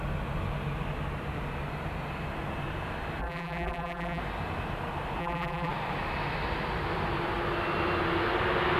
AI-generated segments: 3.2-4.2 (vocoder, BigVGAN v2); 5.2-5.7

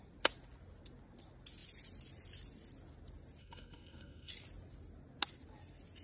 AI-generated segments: 3.4-4.3 (codec, SNAC)